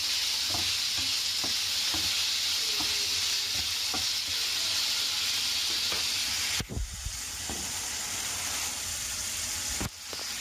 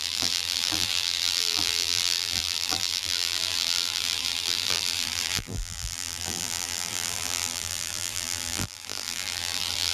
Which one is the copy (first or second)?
second